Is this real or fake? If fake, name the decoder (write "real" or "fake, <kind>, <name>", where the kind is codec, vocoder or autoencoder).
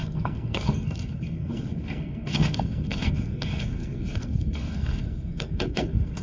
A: fake, codec, SNAC